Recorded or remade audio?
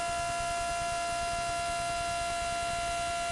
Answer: recorded